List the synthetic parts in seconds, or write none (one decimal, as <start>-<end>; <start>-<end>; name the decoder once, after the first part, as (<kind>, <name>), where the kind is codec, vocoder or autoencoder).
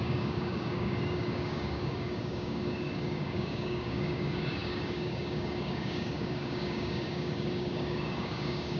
0.0-8.8 (codec, DAC)